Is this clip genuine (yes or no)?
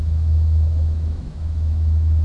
no